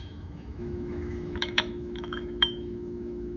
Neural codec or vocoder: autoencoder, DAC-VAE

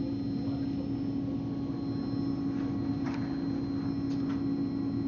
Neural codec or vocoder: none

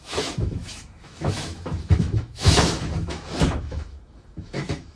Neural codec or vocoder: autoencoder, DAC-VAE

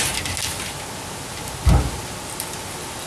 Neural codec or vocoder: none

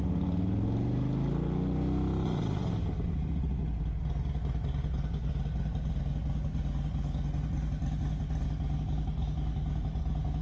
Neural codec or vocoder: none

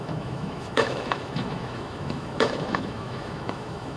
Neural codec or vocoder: autoencoder, DAC-VAE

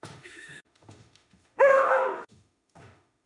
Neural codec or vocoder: autoencoder, DAC-VAE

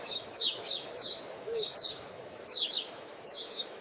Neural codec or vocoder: autoencoder, DAC-VAE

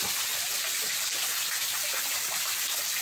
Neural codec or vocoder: none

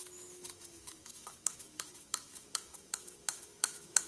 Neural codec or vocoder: autoencoder, DAC-VAE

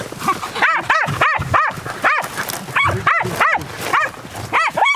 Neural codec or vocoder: none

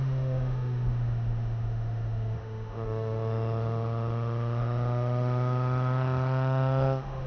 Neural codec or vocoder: autoencoder, DAC-VAE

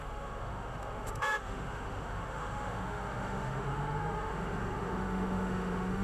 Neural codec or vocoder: autoencoder, DAC-VAE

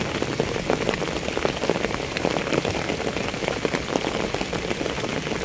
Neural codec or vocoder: none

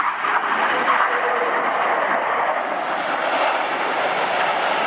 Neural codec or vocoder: none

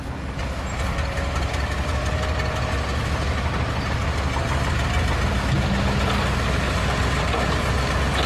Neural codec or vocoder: none